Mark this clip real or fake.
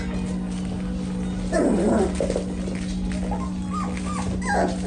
real